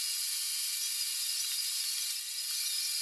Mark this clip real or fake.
real